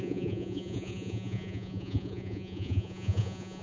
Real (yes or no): no